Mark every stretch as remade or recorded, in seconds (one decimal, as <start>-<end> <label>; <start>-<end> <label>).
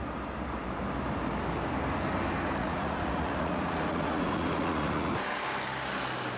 0.0-2.6 recorded; 2.6-5.1 remade; 5.1-6.4 recorded